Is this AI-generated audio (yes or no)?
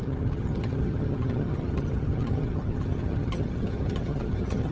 yes